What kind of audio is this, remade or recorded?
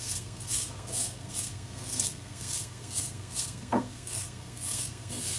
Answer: remade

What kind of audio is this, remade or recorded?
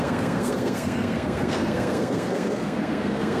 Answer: remade